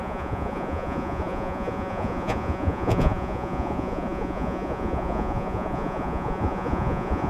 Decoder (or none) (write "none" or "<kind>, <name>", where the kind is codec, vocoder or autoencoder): vocoder, Vocos